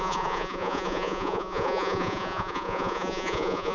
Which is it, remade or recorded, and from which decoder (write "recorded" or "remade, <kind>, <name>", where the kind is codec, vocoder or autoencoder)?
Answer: remade, vocoder, Vocos